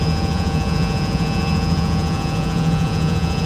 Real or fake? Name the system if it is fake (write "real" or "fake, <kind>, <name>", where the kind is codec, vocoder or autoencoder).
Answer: fake, vocoder, Vocos